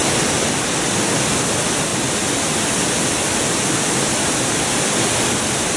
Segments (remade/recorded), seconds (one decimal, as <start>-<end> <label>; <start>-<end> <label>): 0.0-5.8 recorded